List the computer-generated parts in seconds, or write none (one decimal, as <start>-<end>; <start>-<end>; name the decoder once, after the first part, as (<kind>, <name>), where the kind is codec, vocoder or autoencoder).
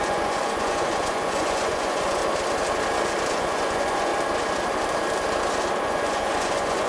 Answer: 0.0-2.2 (vocoder, Vocos); 3.3-4.1; 5.8-6.9